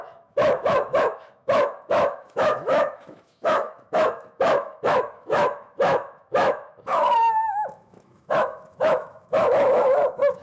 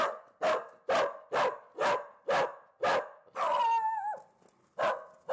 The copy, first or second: first